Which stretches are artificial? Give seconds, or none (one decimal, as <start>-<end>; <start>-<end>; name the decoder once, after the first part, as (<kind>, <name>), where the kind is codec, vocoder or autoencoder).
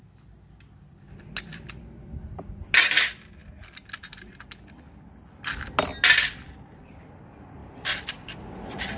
none